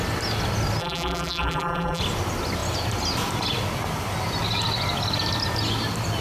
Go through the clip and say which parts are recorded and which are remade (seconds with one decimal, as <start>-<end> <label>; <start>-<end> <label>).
0.0-0.8 recorded; 0.8-2.0 remade; 2.0-6.2 recorded